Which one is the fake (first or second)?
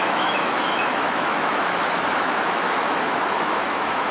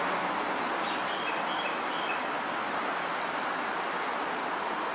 first